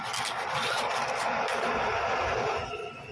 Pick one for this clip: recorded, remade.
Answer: recorded